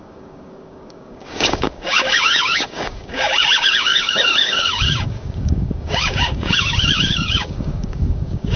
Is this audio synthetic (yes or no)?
yes